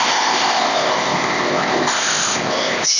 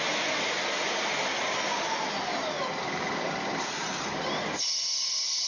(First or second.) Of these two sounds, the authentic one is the second